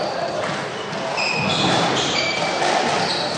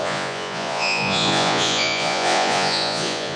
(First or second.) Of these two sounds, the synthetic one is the second